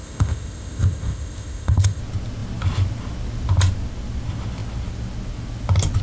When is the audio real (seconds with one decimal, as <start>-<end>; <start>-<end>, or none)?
2.0-6.0